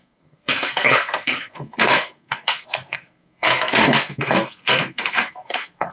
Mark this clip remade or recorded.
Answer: remade